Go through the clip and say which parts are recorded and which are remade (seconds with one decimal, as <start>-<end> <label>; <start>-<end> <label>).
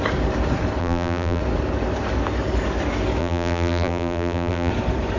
0.0-0.8 recorded; 0.8-1.4 remade; 1.4-3.2 recorded; 3.2-4.7 remade; 4.7-5.2 recorded